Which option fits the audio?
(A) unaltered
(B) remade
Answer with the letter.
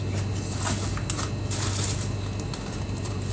A